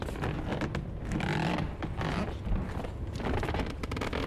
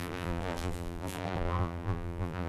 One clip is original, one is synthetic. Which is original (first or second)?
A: first